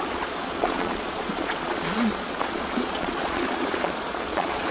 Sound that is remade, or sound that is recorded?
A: remade